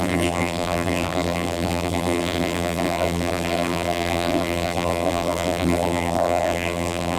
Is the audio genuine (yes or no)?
no